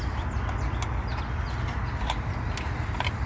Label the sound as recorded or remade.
recorded